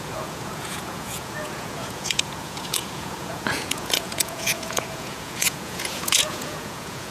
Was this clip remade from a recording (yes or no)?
yes